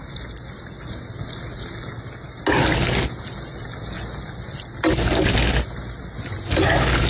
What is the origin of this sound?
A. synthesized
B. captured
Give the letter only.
B